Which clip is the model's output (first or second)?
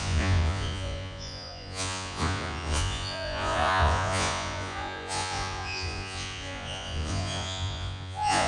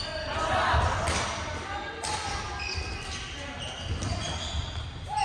first